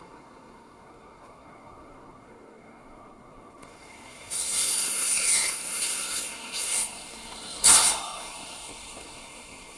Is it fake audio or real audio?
fake